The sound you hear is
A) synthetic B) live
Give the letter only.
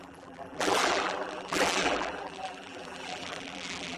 A